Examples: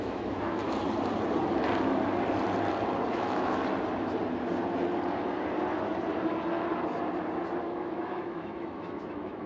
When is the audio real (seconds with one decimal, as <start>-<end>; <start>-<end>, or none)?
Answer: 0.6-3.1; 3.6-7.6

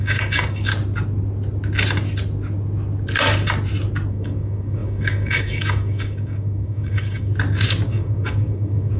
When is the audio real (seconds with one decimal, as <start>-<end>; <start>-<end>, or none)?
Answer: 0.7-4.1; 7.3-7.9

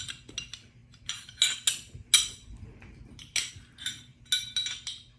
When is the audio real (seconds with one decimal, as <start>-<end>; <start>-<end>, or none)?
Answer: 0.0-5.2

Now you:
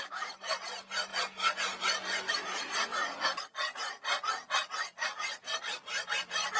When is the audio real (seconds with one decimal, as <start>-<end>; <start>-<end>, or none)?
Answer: 1.1-2.3; 3.0-5.4

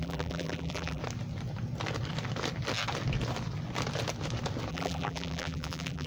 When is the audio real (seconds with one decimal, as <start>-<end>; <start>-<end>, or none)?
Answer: 1.0-4.7

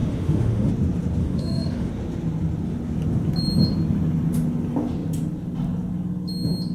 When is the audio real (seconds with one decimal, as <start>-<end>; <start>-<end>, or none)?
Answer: 0.7-1.2; 1.9-6.7

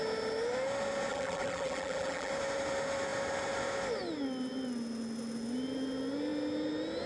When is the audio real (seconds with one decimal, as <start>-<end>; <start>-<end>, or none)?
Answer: 0.0-1.1; 2.3-7.1